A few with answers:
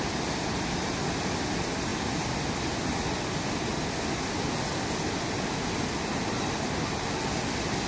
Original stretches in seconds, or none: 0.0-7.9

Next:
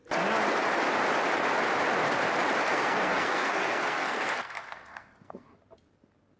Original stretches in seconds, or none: 0.0-2.7; 5.5-6.4

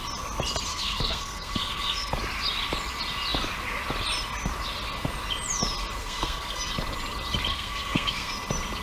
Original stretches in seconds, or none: 0.0-0.7; 2.1-6.0; 6.7-7.5; 8.3-8.8

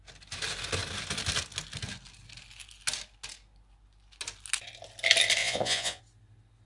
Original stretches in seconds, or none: 0.0-5.4; 6.0-6.7

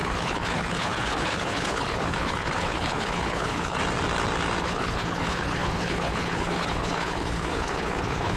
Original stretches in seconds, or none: 3.8-4.6

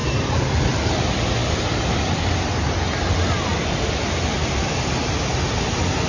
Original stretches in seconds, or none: 0.6-6.1

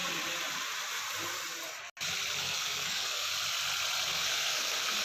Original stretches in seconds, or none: 0.0-2.4; 3.3-4.1